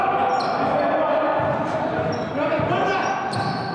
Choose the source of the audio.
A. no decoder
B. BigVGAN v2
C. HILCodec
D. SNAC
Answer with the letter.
A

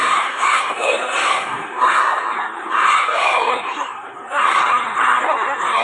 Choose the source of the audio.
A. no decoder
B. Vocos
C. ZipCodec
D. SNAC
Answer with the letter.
D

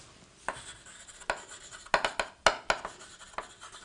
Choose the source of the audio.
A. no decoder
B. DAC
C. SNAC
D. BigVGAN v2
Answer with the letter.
A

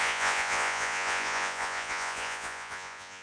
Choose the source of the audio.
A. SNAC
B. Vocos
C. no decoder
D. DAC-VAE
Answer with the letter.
B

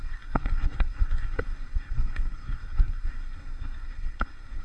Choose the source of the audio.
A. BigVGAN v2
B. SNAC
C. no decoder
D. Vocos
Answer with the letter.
B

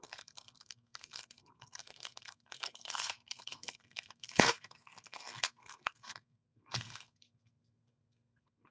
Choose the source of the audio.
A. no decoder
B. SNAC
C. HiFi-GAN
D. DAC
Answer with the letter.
B